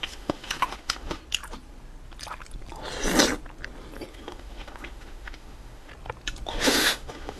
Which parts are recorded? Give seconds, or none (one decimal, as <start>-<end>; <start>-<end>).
1.2-4.1; 5.9-6.5